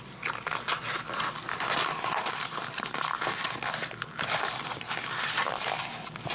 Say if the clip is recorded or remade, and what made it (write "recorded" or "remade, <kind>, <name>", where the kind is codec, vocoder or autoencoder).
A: recorded